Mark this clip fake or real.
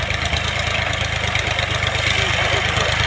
real